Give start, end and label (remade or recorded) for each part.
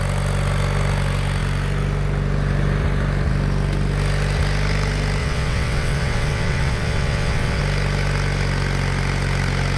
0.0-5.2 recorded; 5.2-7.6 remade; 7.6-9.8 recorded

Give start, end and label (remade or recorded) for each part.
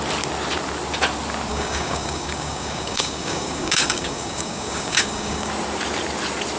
0.0-1.5 recorded; 1.5-5.5 remade; 5.5-6.6 recorded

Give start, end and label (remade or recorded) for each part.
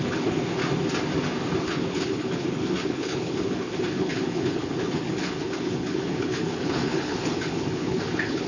0.0-0.6 remade; 0.6-1.6 recorded; 1.6-8.5 remade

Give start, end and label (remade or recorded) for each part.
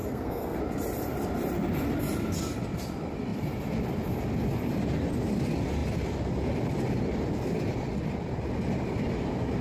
0.0-0.6 remade; 0.6-9.6 recorded